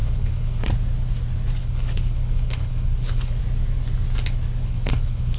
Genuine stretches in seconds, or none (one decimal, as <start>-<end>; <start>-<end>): 0.6-1.6; 3.4-4.6